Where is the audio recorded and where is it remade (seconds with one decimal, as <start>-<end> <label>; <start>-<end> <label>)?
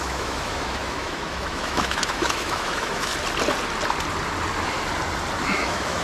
0.0-3.1 remade; 3.1-5.4 recorded; 5.4-6.0 remade